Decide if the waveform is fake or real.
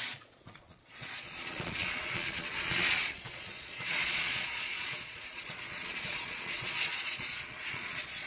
fake